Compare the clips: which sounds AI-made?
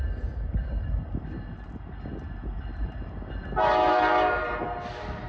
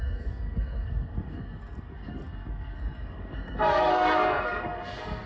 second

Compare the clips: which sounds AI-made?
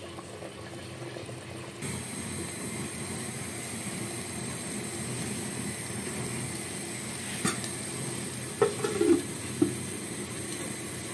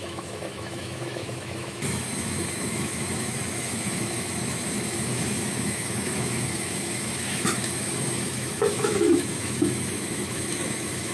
second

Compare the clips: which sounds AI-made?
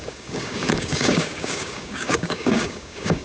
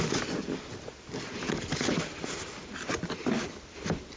first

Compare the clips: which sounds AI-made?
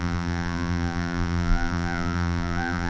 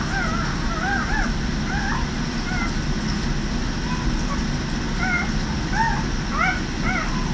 first